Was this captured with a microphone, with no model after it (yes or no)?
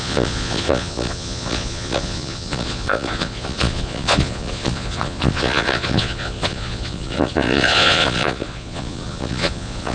no